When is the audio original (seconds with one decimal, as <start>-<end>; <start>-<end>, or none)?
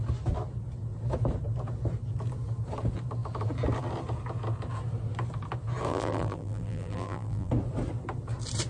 0.0-5.9; 7.5-8.7